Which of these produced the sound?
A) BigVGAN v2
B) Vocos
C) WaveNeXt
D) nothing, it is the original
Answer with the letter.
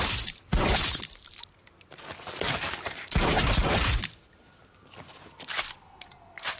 D